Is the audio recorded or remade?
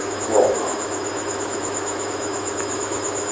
remade